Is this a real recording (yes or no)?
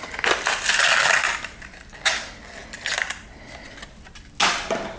yes